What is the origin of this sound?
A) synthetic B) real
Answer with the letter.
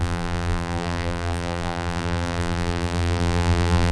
A